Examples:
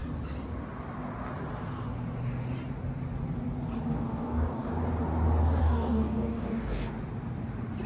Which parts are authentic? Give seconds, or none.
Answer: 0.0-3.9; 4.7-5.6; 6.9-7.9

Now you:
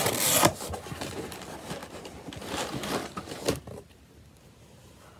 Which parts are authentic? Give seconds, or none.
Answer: 0.0-5.2

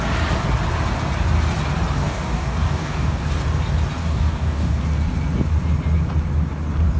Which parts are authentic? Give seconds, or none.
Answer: 0.0-2.0; 3.2-4.0; 4.8-7.0